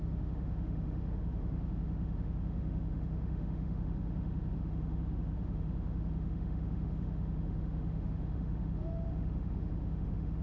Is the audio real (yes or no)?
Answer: no